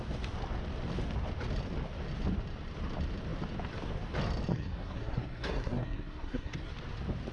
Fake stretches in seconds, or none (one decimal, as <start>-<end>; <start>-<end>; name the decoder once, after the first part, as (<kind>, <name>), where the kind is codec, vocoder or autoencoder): 4.5-6.7 (codec, SNAC)